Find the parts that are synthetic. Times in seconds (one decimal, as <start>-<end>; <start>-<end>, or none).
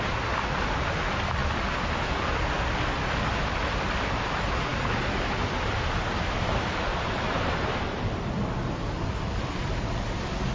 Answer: 4.7-5.3; 6.9-7.7